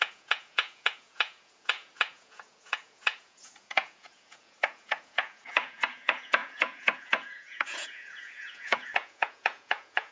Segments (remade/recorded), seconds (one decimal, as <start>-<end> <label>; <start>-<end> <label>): 0.0-10.1 remade